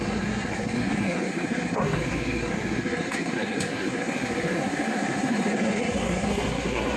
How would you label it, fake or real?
fake